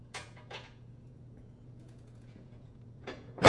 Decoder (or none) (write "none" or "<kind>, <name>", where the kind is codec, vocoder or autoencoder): vocoder, Vocos